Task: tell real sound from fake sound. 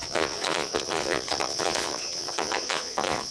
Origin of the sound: fake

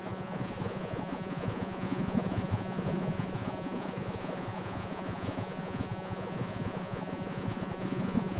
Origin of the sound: fake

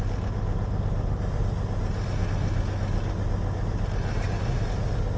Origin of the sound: real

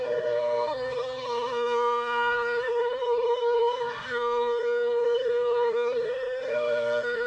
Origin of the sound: fake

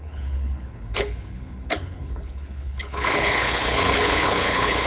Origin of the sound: fake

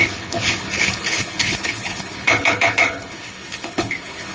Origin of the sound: fake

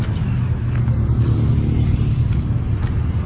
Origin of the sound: real